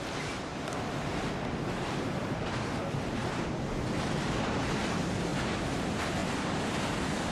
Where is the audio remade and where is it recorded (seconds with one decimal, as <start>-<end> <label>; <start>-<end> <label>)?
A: 0.0-0.5 remade; 0.5-1.0 recorded; 1.0-3.2 remade; 3.2-4.8 recorded; 4.8-7.3 remade